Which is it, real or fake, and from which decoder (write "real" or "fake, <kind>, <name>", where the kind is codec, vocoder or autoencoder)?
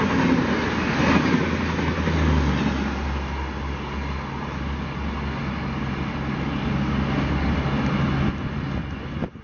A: real